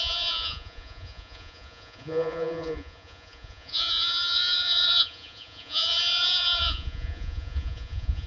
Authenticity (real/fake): fake